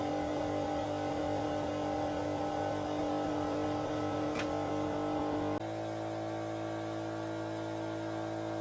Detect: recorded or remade recorded